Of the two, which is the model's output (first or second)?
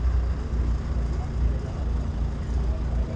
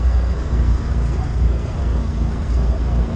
second